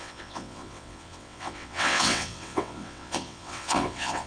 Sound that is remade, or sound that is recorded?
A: remade